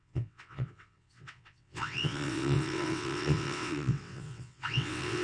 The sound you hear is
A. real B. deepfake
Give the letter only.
B